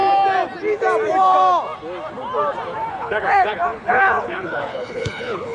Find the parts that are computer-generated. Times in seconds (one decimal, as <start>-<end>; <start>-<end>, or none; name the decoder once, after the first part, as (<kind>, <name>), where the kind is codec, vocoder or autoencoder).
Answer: 2.9-5.5 (codec, HILCodec)